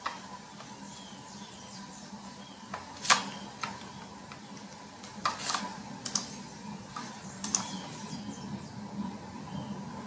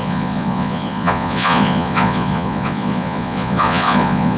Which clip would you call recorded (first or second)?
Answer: first